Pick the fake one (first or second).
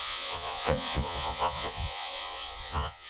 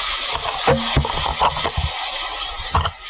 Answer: first